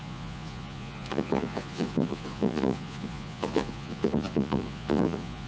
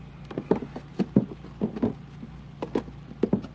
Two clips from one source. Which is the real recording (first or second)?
second